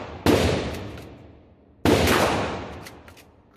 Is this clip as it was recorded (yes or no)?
yes